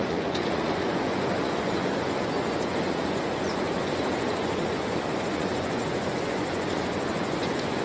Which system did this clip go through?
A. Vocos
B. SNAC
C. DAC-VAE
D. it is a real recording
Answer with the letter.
A